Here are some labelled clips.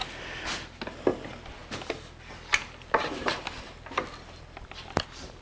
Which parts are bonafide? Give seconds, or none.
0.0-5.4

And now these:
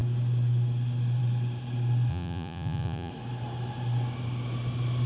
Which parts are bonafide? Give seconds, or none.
0.0-2.1; 3.1-5.1

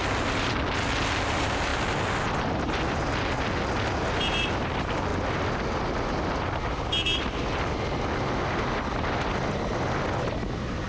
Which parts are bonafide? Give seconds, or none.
0.0-10.9